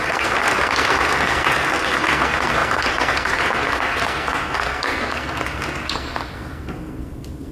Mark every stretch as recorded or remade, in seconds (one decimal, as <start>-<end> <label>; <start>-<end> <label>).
0.0-7.5 remade